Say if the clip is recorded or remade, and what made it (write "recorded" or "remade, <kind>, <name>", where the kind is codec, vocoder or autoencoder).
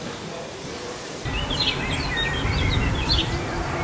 recorded